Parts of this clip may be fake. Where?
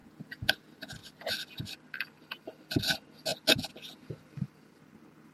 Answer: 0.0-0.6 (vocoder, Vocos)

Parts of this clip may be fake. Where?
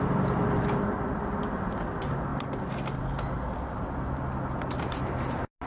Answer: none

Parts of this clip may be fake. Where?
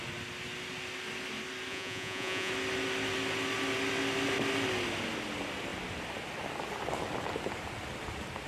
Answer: 1.7-2.5 (vocoder, Vocos)